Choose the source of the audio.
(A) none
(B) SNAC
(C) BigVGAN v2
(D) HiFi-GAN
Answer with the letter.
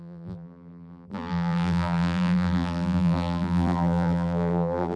C